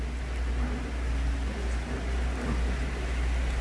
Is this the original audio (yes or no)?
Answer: yes